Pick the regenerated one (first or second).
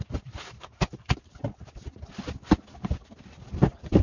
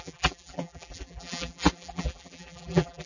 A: second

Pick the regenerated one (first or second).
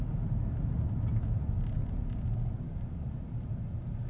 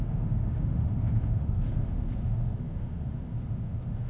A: second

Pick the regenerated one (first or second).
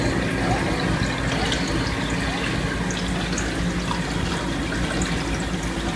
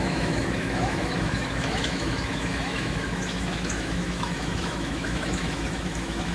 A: second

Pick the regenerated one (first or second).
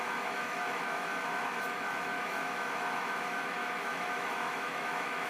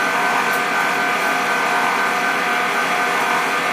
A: first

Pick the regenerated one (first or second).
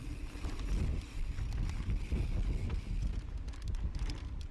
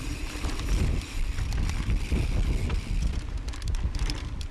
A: second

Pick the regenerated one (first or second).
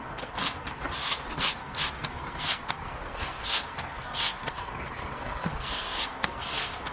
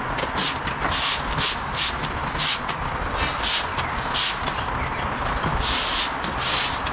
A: first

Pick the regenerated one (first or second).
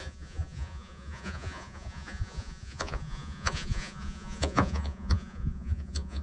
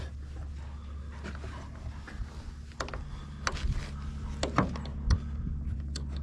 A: first